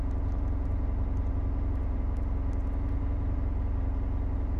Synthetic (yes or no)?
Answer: no